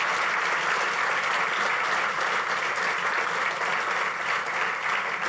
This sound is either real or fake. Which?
real